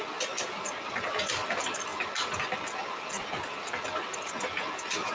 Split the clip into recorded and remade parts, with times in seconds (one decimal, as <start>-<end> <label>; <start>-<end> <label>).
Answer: 0.0-5.1 recorded